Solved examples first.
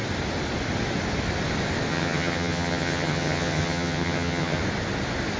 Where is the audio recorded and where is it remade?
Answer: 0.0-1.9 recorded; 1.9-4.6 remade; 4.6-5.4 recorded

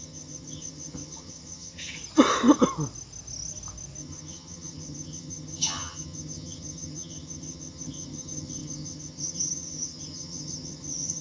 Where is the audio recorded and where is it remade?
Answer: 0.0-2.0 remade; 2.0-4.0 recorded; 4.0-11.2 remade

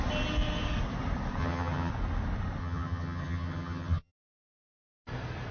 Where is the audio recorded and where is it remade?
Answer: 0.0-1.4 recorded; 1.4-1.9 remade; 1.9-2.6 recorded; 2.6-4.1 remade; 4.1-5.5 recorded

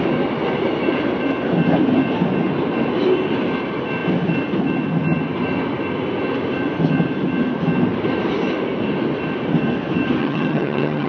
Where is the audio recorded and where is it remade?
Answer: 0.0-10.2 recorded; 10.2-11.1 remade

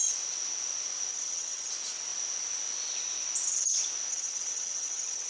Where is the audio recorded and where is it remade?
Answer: 0.0-1.1 recorded; 1.1-1.7 remade; 1.7-4.1 recorded; 4.1-5.3 remade

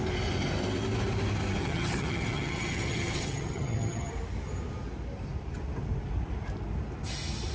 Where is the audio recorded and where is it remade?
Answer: 0.0-1.6 recorded; 1.6-4.1 remade; 4.1-7.5 recorded

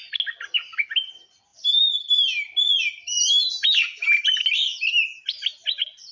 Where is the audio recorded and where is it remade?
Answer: 0.0-6.1 recorded

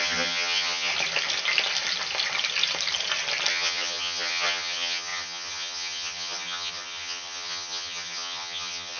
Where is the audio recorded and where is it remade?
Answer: 0.0-0.9 remade; 0.9-3.5 recorded; 3.5-9.0 remade